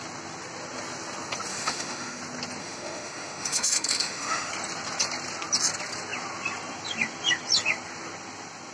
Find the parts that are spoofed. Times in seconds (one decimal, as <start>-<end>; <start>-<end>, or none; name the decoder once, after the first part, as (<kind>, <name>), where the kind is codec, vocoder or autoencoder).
1.5-2.2 (autoencoder, DAC-VAE); 2.6-4.5